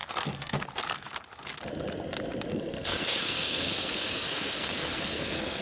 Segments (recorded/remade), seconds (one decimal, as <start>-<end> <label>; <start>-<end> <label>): 0.0-0.7 remade; 0.7-2.5 recorded; 2.5-5.6 remade